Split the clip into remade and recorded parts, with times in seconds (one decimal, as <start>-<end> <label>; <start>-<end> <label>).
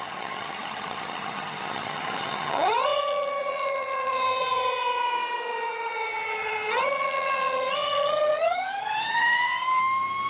0.0-9.8 remade; 9.8-10.3 recorded